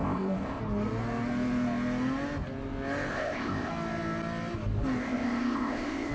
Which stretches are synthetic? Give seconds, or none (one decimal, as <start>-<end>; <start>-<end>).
0.0-0.6; 3.1-3.7; 5.0-6.1